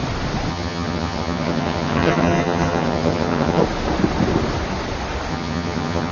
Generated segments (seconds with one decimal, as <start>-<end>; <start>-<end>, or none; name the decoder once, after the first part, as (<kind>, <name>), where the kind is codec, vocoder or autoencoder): 0.5-3.6 (vocoder, HiFi-GAN); 5.3-6.1